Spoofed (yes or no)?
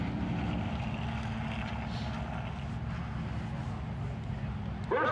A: no